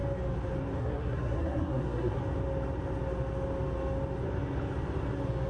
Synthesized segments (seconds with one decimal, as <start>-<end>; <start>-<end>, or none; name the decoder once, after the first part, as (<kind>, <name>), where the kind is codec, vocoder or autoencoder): 0.8-2.2 (codec, SNAC)